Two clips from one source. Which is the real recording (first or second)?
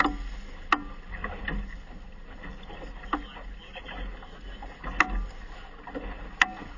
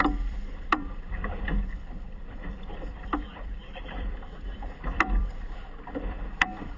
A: first